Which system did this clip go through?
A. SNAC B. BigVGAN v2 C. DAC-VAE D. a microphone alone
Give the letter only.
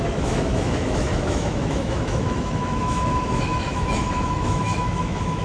C